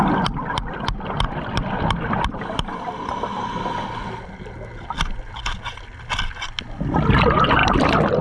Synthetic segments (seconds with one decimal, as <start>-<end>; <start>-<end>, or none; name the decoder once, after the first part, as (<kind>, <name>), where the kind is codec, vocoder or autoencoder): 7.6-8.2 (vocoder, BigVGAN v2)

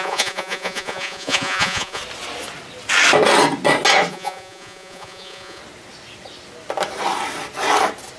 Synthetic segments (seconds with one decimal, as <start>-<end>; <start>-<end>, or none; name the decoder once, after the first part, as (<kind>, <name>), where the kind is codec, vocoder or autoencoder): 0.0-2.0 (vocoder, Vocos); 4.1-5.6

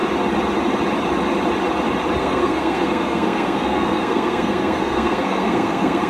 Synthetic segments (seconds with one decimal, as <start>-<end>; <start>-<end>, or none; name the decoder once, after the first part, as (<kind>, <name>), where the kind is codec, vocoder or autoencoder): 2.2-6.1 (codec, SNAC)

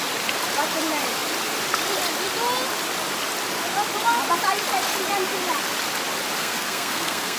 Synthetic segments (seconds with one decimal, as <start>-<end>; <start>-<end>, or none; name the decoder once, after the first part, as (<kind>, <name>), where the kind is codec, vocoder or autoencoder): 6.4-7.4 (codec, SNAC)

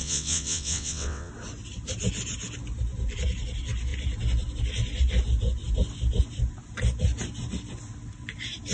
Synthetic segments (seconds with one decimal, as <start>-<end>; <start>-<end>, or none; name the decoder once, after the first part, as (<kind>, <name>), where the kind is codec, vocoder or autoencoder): 0.0-1.3 (vocoder, WaveNeXt)

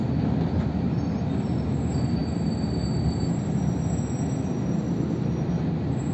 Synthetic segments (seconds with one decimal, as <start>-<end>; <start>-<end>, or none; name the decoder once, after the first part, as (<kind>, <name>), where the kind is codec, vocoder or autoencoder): none

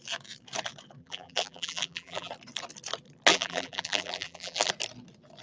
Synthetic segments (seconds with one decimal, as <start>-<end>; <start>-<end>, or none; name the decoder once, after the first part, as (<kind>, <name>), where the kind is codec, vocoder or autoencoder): 1.0-2.3 (vocoder, BigVGAN v2); 3.3-4.7

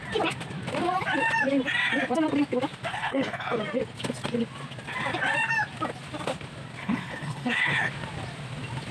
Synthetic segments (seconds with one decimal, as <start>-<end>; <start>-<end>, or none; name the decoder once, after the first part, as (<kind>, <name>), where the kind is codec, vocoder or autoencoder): 2.9-3.6 (codec, HILCodec); 6.8-7.9